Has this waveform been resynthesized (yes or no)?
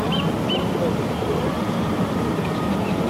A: yes